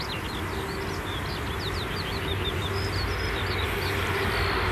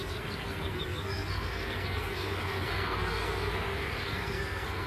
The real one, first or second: first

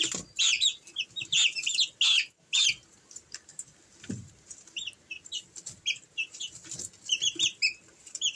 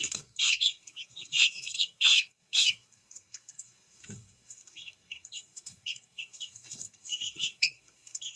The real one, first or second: first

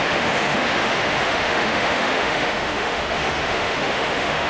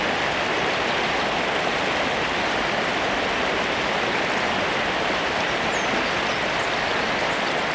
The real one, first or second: second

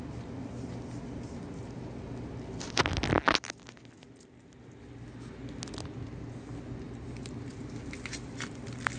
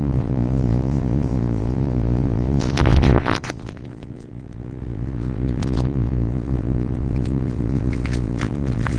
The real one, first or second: first